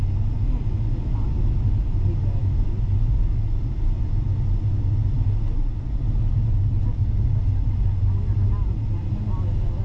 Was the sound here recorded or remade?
recorded